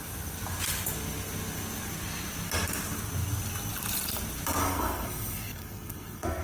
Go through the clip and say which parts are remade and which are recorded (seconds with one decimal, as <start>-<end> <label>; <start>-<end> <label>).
0.0-4.6 recorded; 4.6-6.4 remade